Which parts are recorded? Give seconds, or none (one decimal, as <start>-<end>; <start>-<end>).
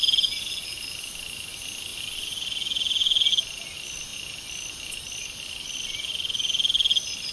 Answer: 0.0-7.3